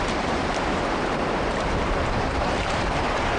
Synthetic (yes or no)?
yes